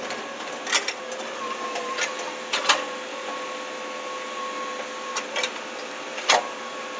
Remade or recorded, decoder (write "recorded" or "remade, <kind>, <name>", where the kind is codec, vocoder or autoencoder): recorded